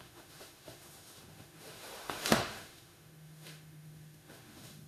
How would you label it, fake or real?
fake